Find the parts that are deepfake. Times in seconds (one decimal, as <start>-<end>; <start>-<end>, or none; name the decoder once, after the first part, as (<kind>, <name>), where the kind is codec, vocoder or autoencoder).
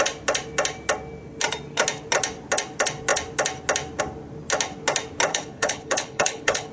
5.3-6.7 (codec, HILCodec)